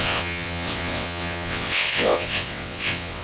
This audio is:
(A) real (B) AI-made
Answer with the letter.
B